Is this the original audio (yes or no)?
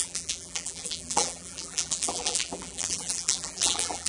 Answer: no